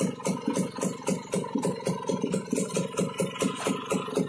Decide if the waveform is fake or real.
real